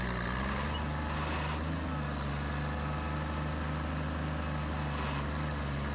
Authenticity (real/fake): real